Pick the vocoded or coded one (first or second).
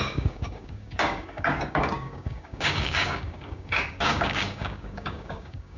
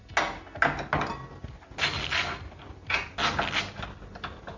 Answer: first